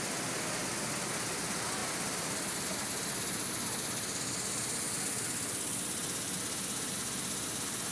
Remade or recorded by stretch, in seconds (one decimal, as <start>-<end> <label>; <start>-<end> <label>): 0.0-7.9 recorded